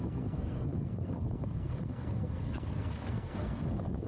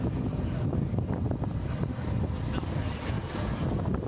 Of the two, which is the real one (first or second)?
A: second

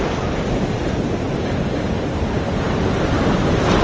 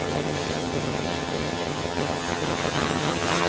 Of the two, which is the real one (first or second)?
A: first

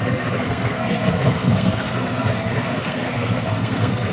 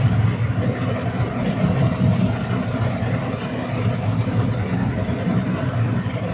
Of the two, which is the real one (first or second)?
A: second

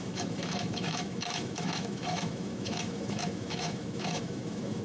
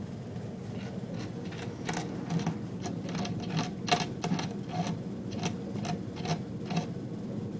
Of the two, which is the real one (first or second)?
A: second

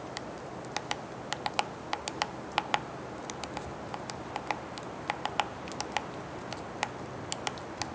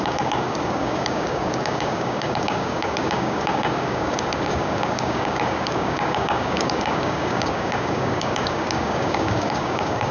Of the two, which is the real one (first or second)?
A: first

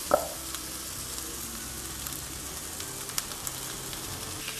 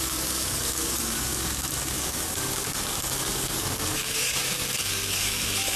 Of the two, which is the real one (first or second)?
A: first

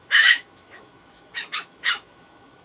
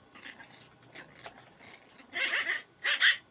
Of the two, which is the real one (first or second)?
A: second